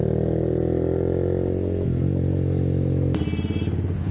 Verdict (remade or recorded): recorded